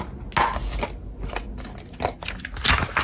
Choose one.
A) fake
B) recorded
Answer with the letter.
B